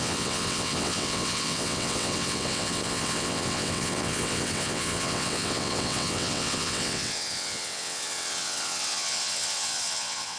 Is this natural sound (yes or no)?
no